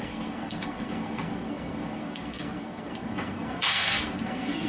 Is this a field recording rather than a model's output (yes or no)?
no